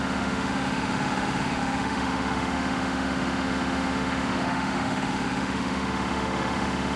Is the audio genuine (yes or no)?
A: no